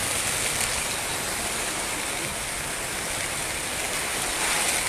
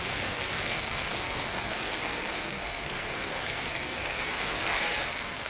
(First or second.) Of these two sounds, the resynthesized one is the second